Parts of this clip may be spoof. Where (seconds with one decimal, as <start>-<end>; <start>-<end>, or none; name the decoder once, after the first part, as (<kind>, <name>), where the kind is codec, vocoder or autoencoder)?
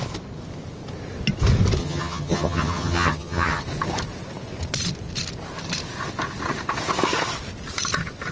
1.8-3.6 (vocoder, HiFi-GAN)